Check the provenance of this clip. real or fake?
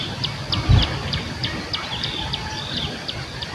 real